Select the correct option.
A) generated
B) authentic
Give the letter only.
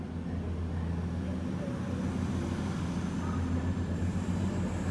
B